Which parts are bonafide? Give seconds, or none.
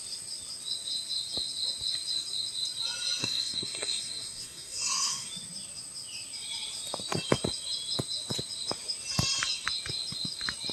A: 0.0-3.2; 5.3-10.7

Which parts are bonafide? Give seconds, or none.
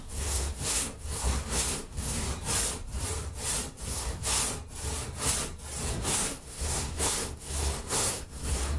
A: 2.2-3.8; 4.4-5.9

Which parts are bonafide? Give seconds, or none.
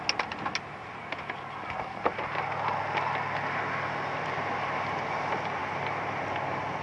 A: 0.0-6.8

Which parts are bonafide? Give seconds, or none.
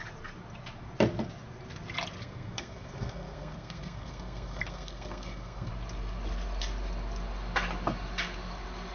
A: 0.0-2.2; 5.7-8.9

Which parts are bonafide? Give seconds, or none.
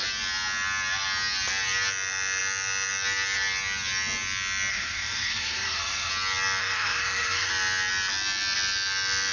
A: 0.0-4.7; 6.1-6.6; 7.5-9.3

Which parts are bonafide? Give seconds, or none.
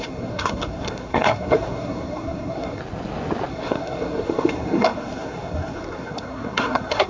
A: 2.8-3.5